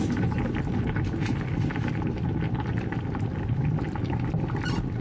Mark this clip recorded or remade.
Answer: recorded